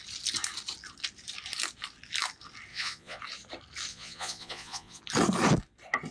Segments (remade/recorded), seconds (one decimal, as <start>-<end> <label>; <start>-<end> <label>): 0.0-2.7 recorded; 2.7-3.2 remade; 3.2-3.9 recorded; 3.9-5.0 remade; 5.0-6.1 recorded